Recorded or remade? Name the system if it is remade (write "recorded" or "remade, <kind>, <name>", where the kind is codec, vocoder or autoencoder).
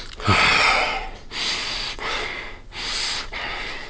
recorded